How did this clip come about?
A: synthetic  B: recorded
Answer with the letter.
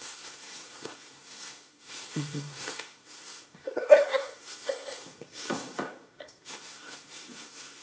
A